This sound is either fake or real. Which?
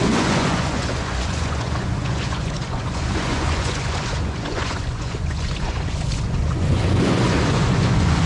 fake